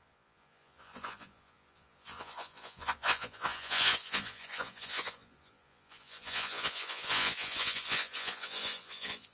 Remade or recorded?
remade